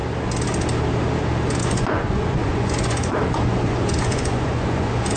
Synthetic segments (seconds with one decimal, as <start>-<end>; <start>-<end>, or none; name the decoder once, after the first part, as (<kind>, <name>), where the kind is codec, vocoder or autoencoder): 1.6-5.2 (vocoder, Vocos)